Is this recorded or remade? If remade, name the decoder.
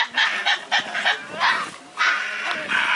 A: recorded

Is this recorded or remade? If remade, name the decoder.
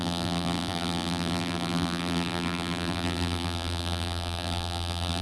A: remade, vocoder, BigVGAN v2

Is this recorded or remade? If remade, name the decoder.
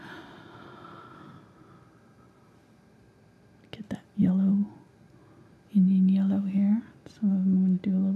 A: recorded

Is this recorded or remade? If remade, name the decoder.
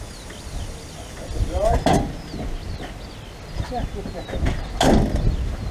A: recorded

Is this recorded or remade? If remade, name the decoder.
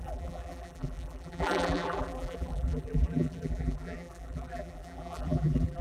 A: remade, vocoder, BigVGAN v2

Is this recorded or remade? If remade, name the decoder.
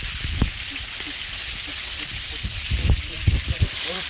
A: remade, vocoder, BigVGAN v2